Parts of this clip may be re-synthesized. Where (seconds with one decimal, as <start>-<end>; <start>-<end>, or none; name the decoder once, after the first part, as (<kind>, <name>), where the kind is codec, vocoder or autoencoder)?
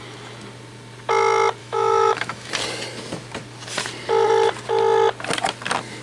1.6-2.5 (autoencoder, DAC-VAE)